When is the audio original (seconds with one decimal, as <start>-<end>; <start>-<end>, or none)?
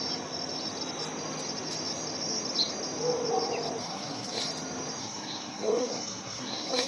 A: 0.0-3.8; 4.4-5.0